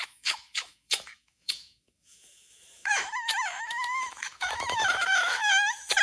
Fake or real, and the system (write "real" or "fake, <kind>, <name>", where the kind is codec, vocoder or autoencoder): fake, autoencoder, DAC-VAE